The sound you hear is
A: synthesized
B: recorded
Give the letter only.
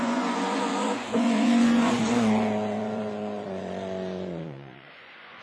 A